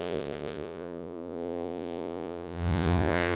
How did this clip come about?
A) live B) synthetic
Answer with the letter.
B